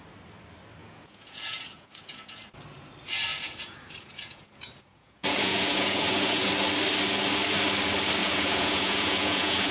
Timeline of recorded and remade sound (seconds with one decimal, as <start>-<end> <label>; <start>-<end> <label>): 0.0-0.8 recorded; 0.8-2.9 remade; 2.9-3.3 recorded; 3.3-6.5 remade; 6.5-8.2 recorded; 8.2-9.7 remade